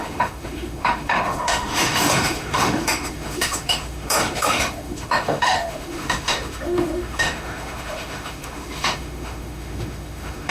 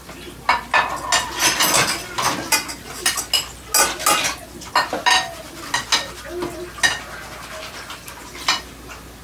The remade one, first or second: first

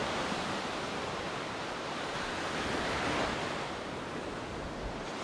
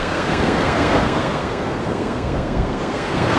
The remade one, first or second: second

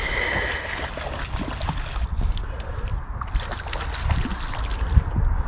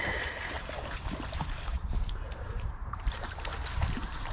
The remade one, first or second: second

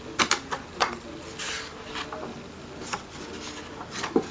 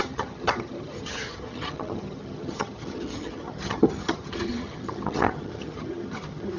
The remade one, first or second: second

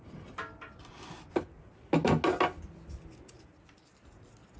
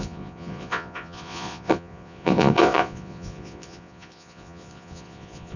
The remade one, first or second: second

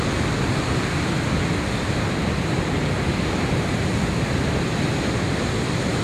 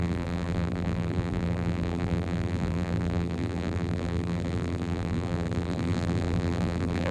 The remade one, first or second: second